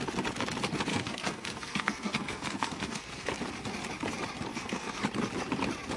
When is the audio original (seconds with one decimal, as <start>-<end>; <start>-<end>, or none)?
0.0-0.9; 3.3-4.5; 5.0-6.0